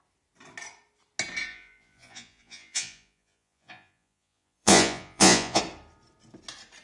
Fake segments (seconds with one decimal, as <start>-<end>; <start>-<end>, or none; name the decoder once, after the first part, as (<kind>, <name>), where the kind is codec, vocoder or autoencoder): 1.5-5.6 (vocoder, Vocos)